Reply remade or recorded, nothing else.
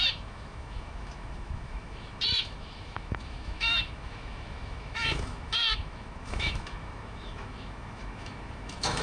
remade